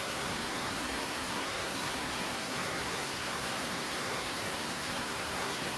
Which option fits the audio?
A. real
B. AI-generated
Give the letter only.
B